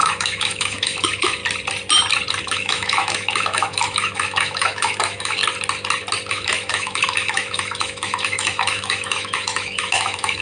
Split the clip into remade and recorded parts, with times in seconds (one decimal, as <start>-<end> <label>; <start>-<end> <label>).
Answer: 0.0-1.4 remade; 1.4-2.4 recorded; 2.4-5.4 remade; 5.4-6.3 recorded; 6.3-10.4 remade

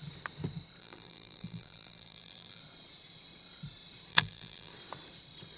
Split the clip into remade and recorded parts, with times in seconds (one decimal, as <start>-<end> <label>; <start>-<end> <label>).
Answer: 0.0-0.8 recorded; 0.8-2.6 remade; 2.6-4.1 recorded; 4.1-4.7 remade; 4.7-5.6 recorded

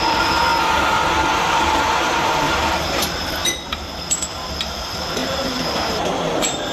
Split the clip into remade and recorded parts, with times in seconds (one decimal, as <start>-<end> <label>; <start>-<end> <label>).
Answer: 0.0-0.5 remade; 0.5-1.3 recorded; 1.3-3.4 remade; 3.4-4.6 recorded; 4.6-6.7 remade

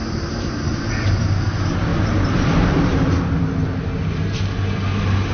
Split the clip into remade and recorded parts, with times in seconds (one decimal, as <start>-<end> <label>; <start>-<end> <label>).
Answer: 0.0-0.8 remade; 0.8-1.9 recorded; 1.9-3.4 remade; 3.4-5.3 recorded

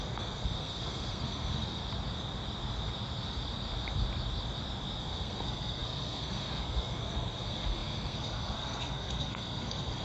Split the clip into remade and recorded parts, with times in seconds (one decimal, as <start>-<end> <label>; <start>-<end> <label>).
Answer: 0.0-1.8 remade; 1.8-5.0 recorded; 5.0-10.0 remade